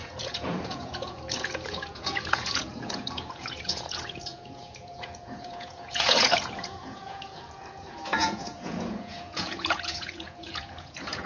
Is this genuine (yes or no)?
no